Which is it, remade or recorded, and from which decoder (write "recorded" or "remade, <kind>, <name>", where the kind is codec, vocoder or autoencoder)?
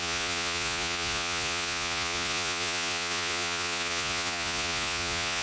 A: remade, vocoder, Vocos